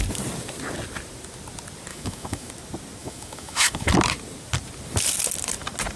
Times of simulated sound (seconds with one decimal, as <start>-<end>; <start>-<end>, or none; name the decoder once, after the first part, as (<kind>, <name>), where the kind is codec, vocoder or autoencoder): 1.9-2.5 (autoencoder, DAC-VAE); 3.0-3.9